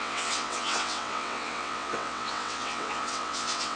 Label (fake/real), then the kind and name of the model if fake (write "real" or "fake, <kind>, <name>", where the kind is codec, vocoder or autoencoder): fake, vocoder, WaveNeXt